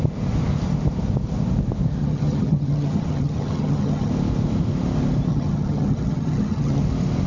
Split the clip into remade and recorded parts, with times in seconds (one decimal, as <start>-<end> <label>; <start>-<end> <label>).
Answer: 0.0-2.0 recorded; 2.0-4.1 remade; 4.1-5.3 recorded; 5.3-6.8 remade; 6.8-7.3 recorded